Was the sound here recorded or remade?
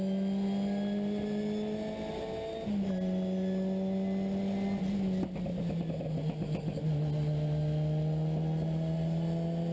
recorded